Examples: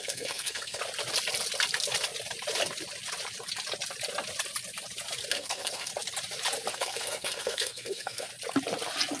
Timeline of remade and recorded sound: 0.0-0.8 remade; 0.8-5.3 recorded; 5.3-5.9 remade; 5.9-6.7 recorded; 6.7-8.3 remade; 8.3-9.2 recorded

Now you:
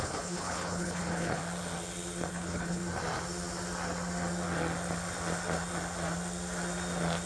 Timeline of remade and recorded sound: 0.0-1.4 remade; 1.4-2.3 recorded; 2.3-2.8 remade; 2.8-7.3 recorded

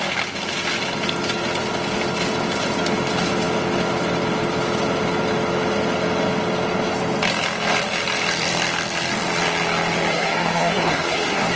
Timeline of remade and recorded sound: 0.0-10.1 recorded; 10.1-11.6 remade

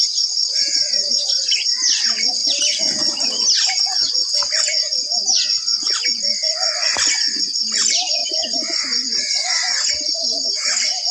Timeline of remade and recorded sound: 0.0-2.4 remade; 2.4-7.4 recorded; 7.4-11.1 remade